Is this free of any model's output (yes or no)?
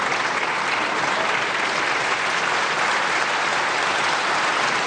yes